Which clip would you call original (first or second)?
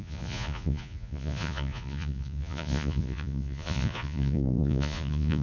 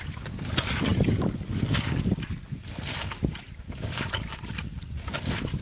second